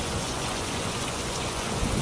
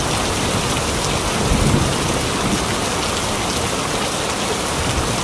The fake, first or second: first